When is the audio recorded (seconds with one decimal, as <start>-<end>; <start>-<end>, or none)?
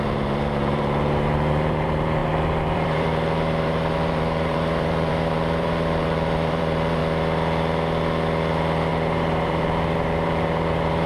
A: 7.0-8.9